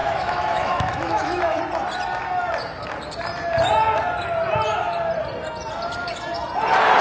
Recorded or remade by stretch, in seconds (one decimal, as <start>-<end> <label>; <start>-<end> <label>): 0.0-1.6 remade; 1.6-7.0 recorded